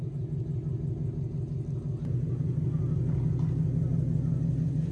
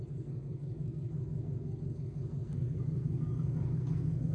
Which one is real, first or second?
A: first